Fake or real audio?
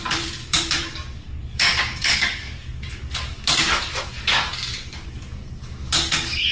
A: fake